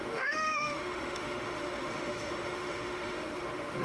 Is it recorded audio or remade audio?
remade